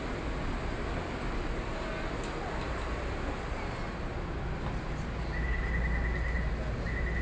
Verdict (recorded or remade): recorded